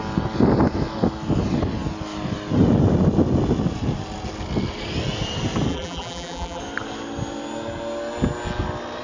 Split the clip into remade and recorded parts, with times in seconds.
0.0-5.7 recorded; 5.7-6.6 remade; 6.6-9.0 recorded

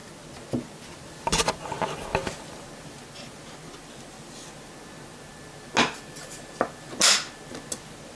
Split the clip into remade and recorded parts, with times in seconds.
0.0-8.1 recorded